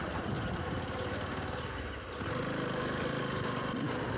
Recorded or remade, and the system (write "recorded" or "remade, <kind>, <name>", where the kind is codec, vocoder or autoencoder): recorded